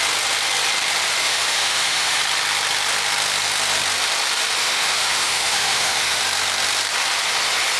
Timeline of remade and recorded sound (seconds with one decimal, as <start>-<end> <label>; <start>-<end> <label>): 0.0-1.2 recorded; 1.2-2.2 remade; 2.2-4.6 recorded; 4.6-6.2 remade; 6.2-7.8 recorded